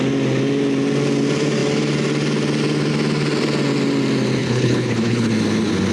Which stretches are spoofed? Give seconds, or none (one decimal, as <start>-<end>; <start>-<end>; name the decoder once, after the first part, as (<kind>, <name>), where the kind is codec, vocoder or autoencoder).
4.4-5.3 (codec, HILCodec)